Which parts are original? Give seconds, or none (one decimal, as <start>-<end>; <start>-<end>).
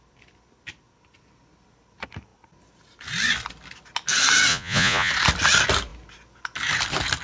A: 0.0-4.5; 5.1-7.2